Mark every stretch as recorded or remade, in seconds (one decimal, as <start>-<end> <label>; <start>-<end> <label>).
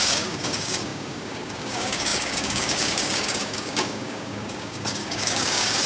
0.0-5.9 remade